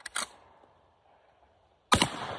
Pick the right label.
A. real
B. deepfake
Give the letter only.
A